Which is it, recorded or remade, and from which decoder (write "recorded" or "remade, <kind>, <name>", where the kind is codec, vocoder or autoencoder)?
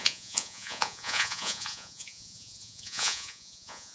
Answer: remade, vocoder, Vocos